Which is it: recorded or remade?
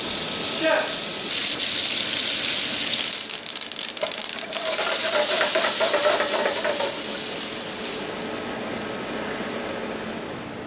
recorded